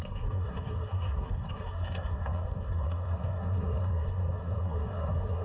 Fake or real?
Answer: fake